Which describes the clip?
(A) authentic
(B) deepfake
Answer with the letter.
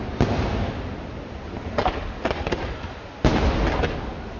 A